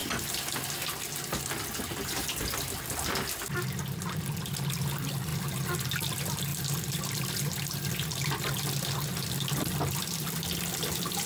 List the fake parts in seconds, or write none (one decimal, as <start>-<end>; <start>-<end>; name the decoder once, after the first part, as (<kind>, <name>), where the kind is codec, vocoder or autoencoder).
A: none